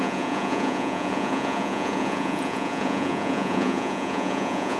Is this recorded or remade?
remade